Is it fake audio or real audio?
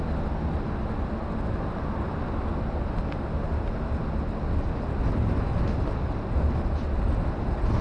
real